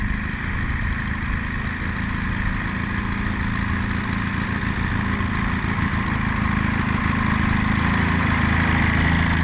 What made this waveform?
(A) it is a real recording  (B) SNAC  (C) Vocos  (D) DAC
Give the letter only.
A